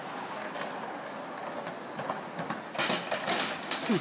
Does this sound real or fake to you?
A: real